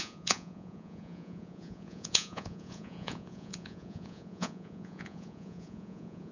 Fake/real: fake